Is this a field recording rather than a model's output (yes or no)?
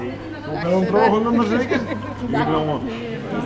yes